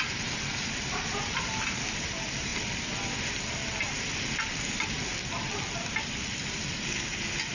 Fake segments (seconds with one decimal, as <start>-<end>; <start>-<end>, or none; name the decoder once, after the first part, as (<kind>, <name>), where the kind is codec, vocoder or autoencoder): 0.0-7.5 (vocoder, BigVGAN v2)